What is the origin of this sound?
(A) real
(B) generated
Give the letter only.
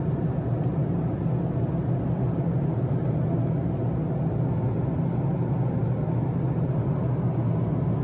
A